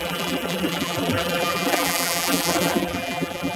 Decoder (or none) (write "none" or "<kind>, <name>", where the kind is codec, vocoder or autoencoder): vocoder, BigVGAN v2